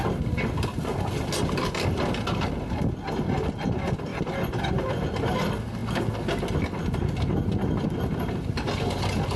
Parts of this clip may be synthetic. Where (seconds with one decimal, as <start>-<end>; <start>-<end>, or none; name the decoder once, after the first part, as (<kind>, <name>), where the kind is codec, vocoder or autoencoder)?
none